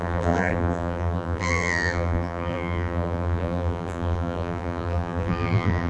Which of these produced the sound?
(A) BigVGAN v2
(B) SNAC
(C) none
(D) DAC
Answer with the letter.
A